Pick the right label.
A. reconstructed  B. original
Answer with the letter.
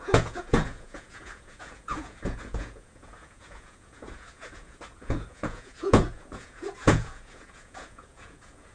A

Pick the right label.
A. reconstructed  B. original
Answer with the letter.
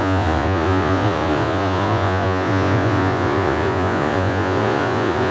A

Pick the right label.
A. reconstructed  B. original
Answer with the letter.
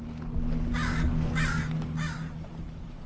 B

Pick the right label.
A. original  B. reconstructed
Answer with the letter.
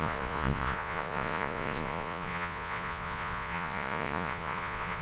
B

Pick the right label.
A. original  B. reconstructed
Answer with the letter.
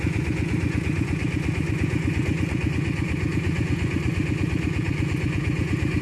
B